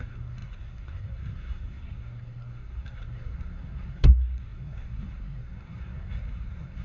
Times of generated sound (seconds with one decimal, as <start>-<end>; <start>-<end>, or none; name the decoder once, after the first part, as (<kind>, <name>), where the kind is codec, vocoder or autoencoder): 0.0-6.8 (codec, SNAC)